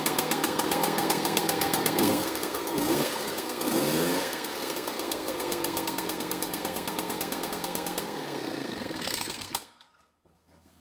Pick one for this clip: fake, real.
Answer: fake